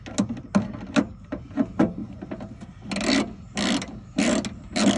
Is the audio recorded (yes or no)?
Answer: yes